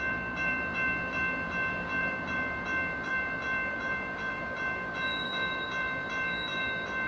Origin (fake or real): fake